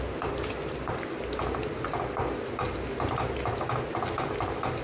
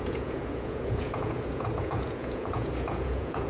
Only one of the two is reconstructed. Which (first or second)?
second